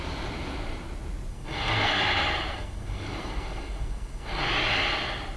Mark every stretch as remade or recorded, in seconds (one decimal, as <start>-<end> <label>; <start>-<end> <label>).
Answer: 0.0-1.3 recorded; 1.3-2.0 remade; 2.0-2.5 recorded; 2.5-4.4 remade; 4.4-5.4 recorded